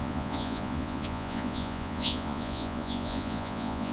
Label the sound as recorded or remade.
remade